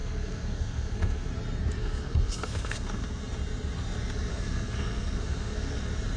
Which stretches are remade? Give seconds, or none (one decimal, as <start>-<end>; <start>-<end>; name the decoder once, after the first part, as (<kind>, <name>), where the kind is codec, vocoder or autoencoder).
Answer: 0.0-1.3 (codec, SNAC); 1.8-3.2; 4.3-5.8